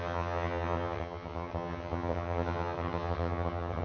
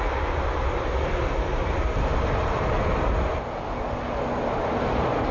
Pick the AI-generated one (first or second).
first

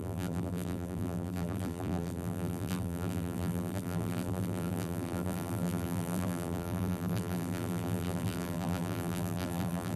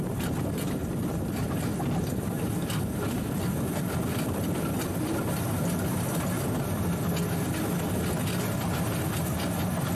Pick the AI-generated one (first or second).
first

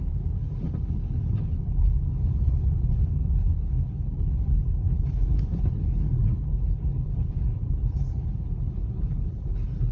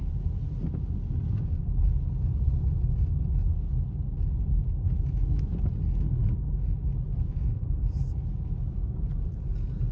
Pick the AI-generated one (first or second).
first